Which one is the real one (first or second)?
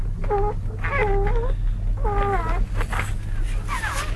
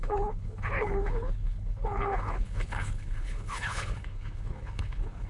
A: first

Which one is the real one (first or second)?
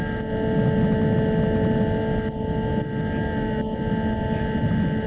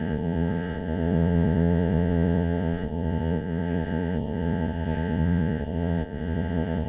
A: first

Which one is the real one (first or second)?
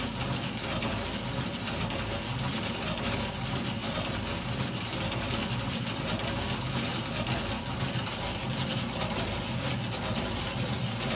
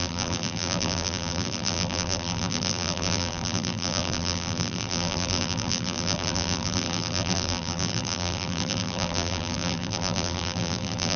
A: first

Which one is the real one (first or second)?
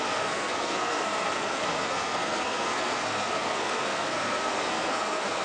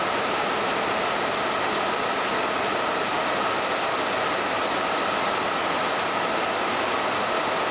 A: second